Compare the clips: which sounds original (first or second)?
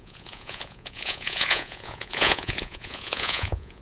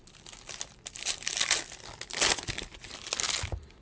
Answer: second